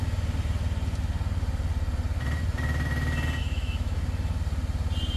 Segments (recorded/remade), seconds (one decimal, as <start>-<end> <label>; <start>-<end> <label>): 0.0-3.4 recorded; 3.4-4.0 remade; 4.0-5.2 recorded